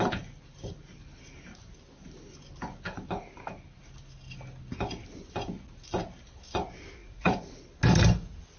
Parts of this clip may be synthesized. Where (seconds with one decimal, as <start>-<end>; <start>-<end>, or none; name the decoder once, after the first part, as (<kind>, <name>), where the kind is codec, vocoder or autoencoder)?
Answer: 7.0-7.5 (vocoder, Vocos)